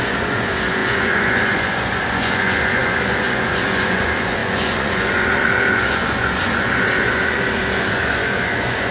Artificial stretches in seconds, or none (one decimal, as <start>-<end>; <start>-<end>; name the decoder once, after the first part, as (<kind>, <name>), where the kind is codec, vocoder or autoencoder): 0.0-8.9 (vocoder, Vocos)